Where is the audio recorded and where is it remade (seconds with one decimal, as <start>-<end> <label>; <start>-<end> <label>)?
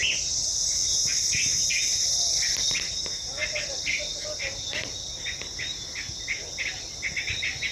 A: 0.0-7.7 recorded